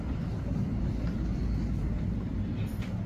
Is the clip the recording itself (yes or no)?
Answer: yes